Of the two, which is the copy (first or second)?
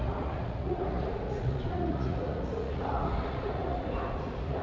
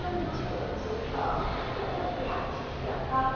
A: first